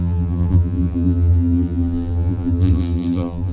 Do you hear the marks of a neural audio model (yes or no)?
yes